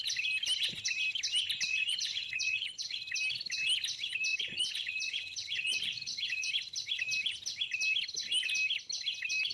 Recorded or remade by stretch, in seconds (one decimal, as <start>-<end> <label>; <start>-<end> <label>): 0.0-1.7 recorded; 1.7-3.0 remade; 3.0-4.3 recorded; 4.3-6.5 remade; 6.5-9.5 recorded